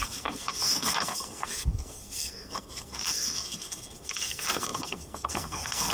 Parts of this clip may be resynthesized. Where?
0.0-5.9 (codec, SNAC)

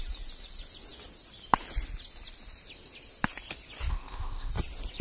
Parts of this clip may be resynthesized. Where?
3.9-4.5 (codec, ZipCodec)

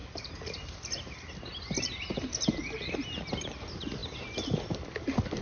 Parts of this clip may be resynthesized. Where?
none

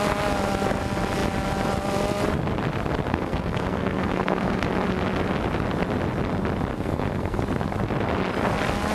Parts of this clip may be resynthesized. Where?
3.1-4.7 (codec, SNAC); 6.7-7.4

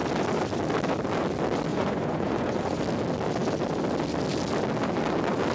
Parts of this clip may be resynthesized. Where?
1.7-2.8 (vocoder, Vocos)

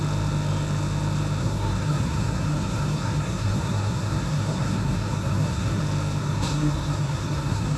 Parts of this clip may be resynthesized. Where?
1.4-5.8 (codec, SNAC); 6.2-7.8

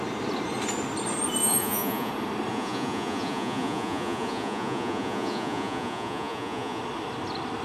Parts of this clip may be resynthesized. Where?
1.4-2.1 (vocoder, Vocos); 2.5-6.8

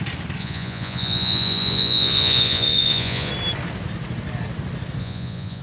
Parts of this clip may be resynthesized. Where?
0.4-3.3 (vocoder, Vocos); 5.0-5.6